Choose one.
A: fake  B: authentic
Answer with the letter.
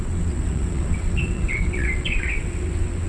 A